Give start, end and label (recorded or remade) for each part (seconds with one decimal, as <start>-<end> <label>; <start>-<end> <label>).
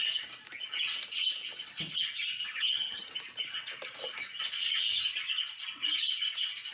0.0-2.4 recorded; 2.4-3.1 remade; 3.1-6.7 recorded